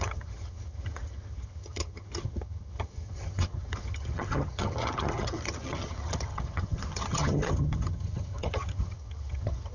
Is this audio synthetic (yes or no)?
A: yes